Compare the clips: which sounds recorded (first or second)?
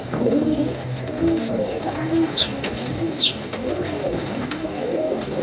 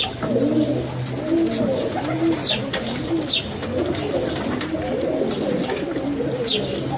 second